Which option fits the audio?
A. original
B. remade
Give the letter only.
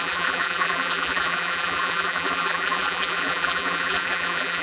B